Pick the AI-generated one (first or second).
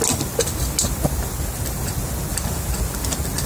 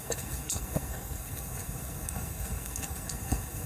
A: second